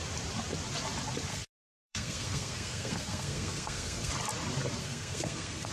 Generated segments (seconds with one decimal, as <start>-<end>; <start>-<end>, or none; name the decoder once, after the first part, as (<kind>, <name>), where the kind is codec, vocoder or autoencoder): 1.3-4.1 (codec, SNAC); 4.8-5.7